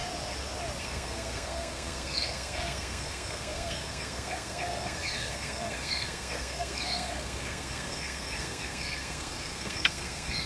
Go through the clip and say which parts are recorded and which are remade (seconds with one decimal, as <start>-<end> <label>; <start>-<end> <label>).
0.0-0.8 recorded; 0.8-10.5 remade